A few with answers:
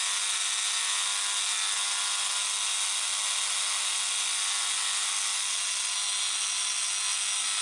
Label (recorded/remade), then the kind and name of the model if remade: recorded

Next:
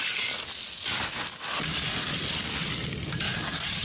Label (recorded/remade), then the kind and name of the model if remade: recorded